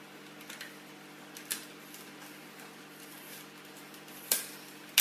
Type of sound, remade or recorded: recorded